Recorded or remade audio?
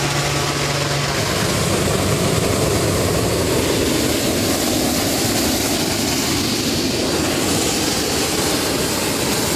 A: recorded